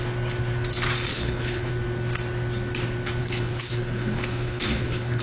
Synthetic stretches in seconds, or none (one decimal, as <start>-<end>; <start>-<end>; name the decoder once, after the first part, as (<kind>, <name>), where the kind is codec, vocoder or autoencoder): 1.1-1.7 (codec, HILCodec); 3.2-5.2